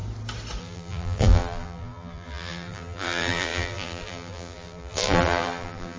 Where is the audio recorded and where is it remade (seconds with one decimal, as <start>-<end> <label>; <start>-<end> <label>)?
0.0-0.6 recorded; 0.6-6.0 remade